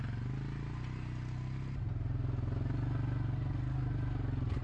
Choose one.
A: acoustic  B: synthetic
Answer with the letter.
A